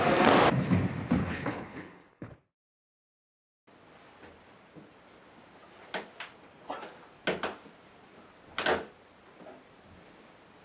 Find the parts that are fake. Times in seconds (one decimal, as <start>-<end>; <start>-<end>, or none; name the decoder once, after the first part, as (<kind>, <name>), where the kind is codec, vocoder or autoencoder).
1.2-2.3 (codec, HILCodec)